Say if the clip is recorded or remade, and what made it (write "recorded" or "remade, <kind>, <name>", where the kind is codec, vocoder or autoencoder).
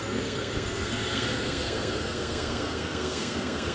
remade, codec, SNAC